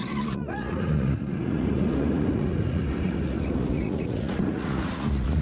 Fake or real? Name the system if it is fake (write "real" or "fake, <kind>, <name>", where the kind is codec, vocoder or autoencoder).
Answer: fake, vocoder, Vocos